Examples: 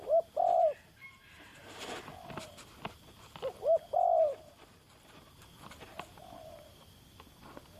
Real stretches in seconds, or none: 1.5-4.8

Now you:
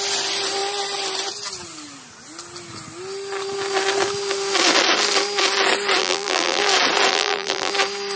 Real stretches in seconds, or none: 0.0-6.0; 6.6-7.1; 7.7-8.2

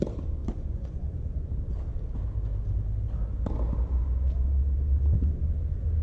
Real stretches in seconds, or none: 0.0-0.4; 1.5-6.0

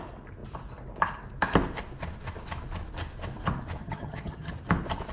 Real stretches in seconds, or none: 0.0-3.8; 4.5-5.1

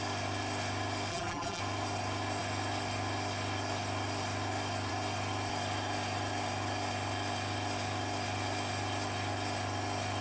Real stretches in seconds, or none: 0.0-1.1; 1.6-10.2

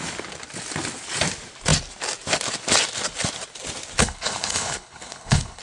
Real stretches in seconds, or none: 0.0-4.0